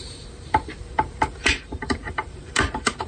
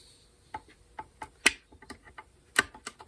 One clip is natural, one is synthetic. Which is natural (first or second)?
second